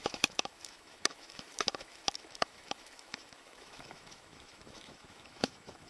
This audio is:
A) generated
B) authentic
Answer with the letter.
A